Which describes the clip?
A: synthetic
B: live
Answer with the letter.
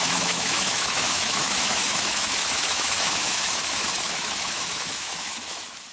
A